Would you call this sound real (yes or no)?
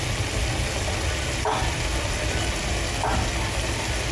yes